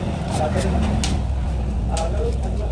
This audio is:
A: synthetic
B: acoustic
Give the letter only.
B